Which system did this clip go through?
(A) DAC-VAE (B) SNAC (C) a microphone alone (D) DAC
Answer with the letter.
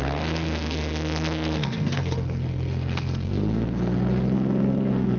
B